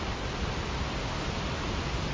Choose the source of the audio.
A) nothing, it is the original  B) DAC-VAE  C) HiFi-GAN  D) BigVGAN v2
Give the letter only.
A